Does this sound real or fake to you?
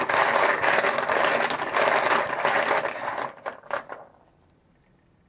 real